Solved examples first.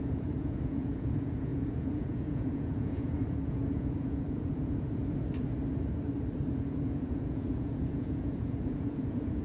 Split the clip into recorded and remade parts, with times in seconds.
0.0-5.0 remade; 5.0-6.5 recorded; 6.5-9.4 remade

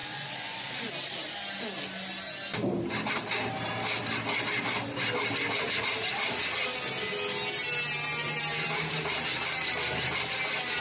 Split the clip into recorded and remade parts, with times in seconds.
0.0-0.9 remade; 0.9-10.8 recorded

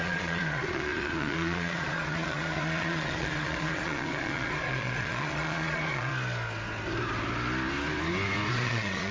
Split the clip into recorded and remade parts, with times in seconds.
0.0-6.1 remade; 6.1-8.5 recorded; 8.5-9.1 remade

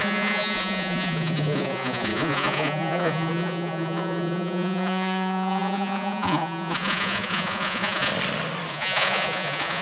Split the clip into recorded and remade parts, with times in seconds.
0.0-8.1 remade; 8.1-8.7 recorded; 8.7-9.8 remade

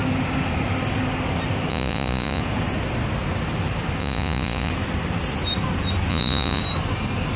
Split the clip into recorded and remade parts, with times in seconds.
0.0-1.7 recorded; 1.7-2.4 remade; 2.4-4.0 recorded; 4.0-4.7 remade; 4.7-6.1 recorded; 6.1-6.6 remade; 6.6-7.4 recorded